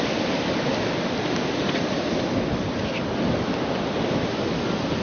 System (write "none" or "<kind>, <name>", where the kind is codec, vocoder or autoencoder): none